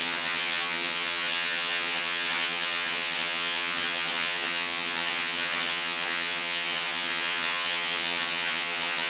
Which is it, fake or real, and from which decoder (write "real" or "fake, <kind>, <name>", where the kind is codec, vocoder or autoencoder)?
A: fake, vocoder, HiFi-GAN